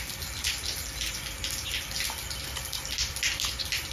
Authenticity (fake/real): real